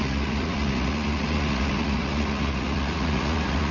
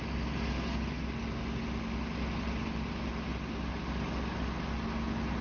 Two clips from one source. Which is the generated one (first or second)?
first